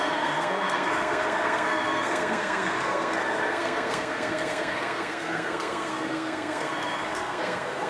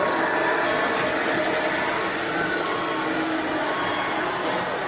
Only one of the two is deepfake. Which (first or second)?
first